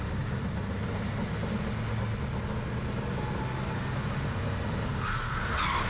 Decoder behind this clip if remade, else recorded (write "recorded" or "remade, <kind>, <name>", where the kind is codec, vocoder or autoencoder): recorded